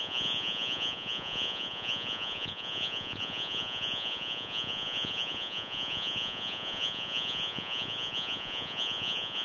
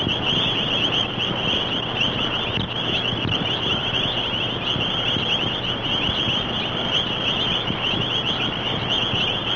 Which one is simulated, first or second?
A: first